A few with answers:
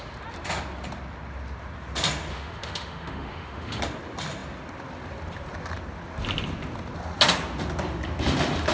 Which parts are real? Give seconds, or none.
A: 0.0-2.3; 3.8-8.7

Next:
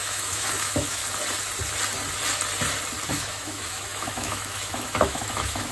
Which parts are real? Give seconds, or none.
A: 1.0-3.1

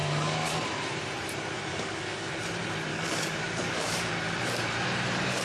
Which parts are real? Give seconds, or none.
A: 0.5-1.7; 2.3-2.9; 4.1-5.4

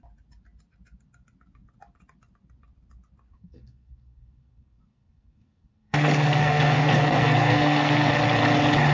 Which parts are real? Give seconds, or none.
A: 0.0-3.3; 8.1-8.9

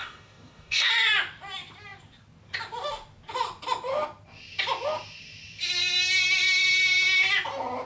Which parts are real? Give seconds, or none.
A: 0.9-7.8